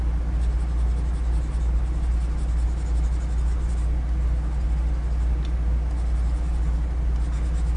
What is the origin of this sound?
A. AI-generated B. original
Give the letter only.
B